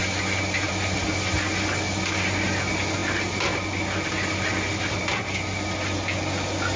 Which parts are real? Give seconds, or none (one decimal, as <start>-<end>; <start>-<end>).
0.0-6.8

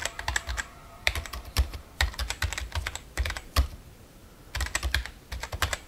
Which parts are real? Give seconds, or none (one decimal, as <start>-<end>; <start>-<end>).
0.0-0.9; 2.2-3.1; 4.2-5.5

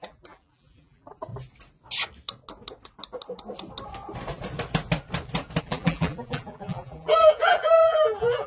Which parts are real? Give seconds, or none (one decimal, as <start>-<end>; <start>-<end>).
1.3-5.6